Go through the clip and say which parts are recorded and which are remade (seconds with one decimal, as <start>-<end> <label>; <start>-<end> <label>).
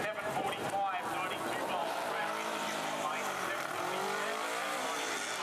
0.0-5.4 recorded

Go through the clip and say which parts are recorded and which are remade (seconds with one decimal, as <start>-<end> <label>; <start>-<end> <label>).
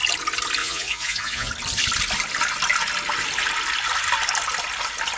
0.0-0.6 recorded; 0.6-1.5 remade; 1.5-5.2 recorded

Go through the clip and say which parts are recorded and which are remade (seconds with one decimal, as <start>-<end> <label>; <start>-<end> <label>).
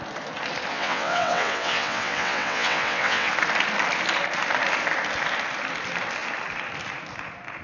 0.0-0.7 recorded; 0.7-3.3 remade; 3.3-7.6 recorded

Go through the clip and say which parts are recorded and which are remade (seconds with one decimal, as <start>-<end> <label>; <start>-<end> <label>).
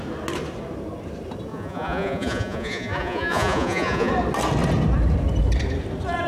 0.0-1.5 recorded; 1.5-4.1 remade; 4.1-6.3 recorded